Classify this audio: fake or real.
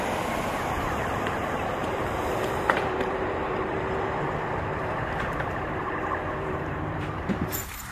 fake